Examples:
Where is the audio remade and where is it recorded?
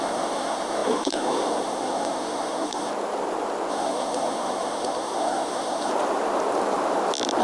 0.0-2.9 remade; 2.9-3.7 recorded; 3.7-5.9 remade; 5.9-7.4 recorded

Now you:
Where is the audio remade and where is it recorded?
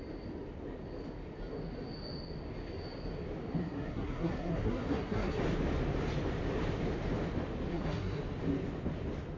0.0-3.6 recorded; 3.6-5.4 remade; 5.4-7.7 recorded; 7.7-8.2 remade; 8.2-9.4 recorded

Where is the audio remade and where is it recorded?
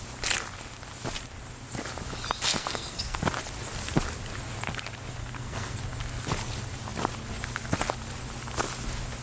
0.0-2.5 recorded; 2.5-3.2 remade; 3.2-5.2 recorded; 5.2-5.8 remade; 5.8-9.2 recorded